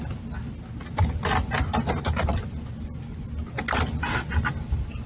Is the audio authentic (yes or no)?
yes